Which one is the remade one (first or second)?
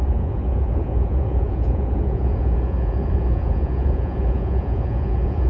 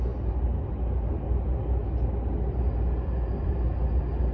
first